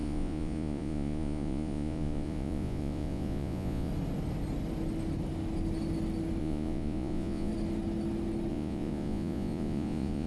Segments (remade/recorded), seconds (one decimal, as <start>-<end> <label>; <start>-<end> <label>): 0.0-3.9 remade; 3.9-6.4 recorded; 6.4-7.5 remade; 7.5-8.5 recorded; 8.5-10.3 remade